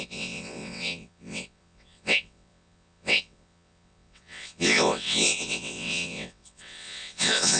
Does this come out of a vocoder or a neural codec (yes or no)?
yes